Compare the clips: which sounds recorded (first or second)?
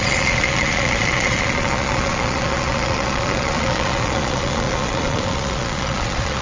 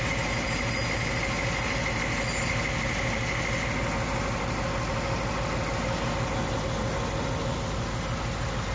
second